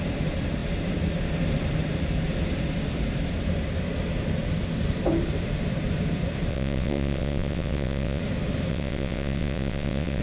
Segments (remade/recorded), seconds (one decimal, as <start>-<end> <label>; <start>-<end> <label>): 0.0-6.5 recorded; 6.5-8.2 remade; 8.2-8.7 recorded; 8.7-10.2 remade